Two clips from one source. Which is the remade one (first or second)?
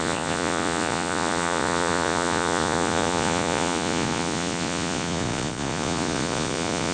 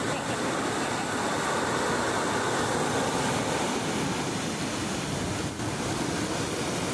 first